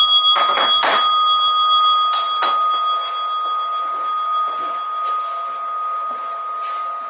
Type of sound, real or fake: real